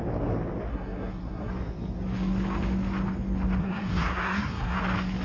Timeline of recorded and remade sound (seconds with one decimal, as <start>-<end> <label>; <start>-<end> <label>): 0.0-0.7 recorded; 0.7-1.5 remade; 1.5-3.6 recorded; 3.6-4.8 remade; 4.8-5.2 recorded